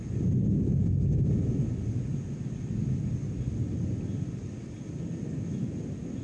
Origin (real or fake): real